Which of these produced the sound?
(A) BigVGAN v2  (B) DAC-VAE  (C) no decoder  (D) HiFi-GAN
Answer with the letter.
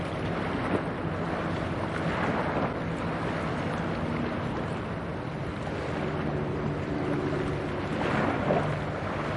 C